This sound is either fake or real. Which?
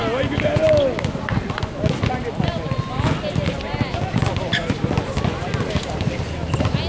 real